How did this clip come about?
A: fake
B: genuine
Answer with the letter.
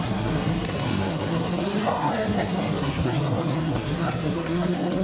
A